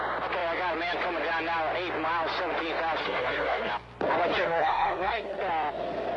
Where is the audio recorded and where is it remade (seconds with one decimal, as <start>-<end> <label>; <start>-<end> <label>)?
0.0-3.0 recorded; 3.0-3.7 remade; 3.7-4.3 recorded; 4.3-5.4 remade; 5.4-6.2 recorded

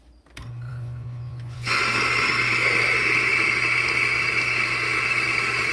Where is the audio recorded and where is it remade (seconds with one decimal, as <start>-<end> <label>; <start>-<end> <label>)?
0.0-0.7 recorded; 0.7-1.8 remade; 1.8-5.7 recorded

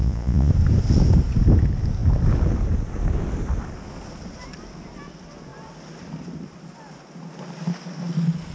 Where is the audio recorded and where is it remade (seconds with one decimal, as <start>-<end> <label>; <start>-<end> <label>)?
0.0-0.5 remade; 0.5-8.5 recorded